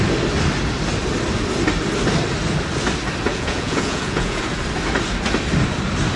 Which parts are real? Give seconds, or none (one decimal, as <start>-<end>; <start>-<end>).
0.0-3.3; 4.4-6.2